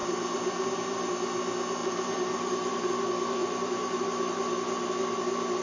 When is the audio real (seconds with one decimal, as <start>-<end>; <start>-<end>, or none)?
1.1-1.8; 2.9-3.4; 4.0-5.6